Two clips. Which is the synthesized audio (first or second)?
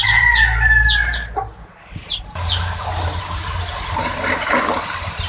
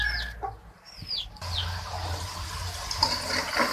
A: first